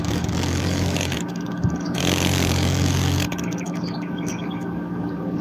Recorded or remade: remade